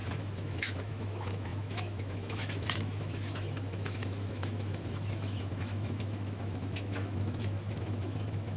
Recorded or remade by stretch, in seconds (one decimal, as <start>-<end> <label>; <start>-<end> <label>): 0.0-8.6 remade

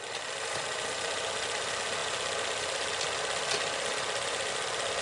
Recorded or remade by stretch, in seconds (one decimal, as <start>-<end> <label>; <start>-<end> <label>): 0.0-5.0 recorded

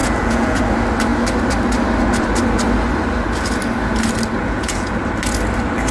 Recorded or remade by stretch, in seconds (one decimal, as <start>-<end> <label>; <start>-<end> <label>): 0.0-0.6 remade; 0.6-4.4 recorded; 4.4-5.0 remade; 5.0-5.9 recorded

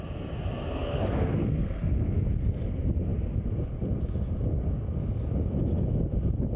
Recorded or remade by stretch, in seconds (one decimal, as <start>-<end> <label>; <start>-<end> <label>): 0.0-0.7 recorded; 0.7-2.2 remade; 2.2-6.6 recorded

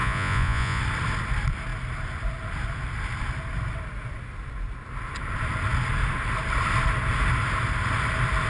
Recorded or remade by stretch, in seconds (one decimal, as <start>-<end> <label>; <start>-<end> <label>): 0.0-0.8 remade; 0.8-8.5 recorded

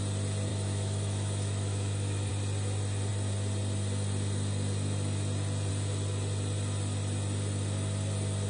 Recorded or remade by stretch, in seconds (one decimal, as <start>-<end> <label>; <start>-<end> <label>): 0.0-0.5 recorded; 0.5-2.3 remade; 2.3-8.5 recorded